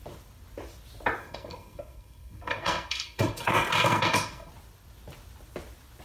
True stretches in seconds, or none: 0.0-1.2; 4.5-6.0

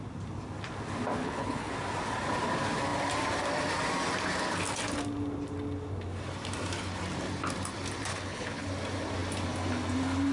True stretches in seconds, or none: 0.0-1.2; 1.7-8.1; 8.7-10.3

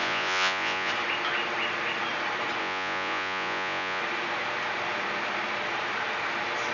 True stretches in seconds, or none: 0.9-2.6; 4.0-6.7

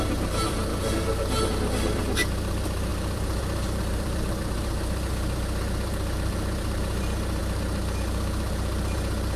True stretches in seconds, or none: 5.1-5.6

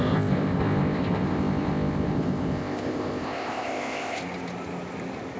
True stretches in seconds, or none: 4.2-5.4